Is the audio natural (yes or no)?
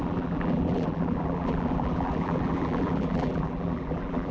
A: no